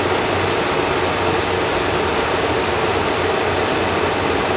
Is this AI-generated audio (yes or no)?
no